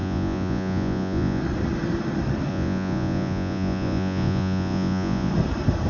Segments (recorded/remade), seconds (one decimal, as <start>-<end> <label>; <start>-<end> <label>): 0.0-1.4 remade; 1.4-2.5 recorded; 2.5-5.3 remade; 5.3-5.9 recorded